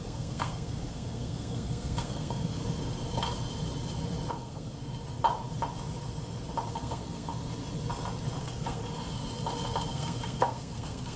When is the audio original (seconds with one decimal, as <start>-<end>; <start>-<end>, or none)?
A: 2.6-4.3; 4.9-6.7; 7.3-8.4; 8.8-9.9